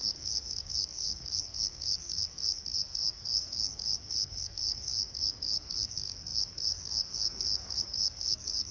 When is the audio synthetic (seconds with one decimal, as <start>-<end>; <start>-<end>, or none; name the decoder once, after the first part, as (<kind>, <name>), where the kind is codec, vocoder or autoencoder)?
0.0-8.7 (codec, SNAC)